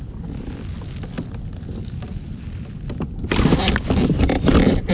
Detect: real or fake real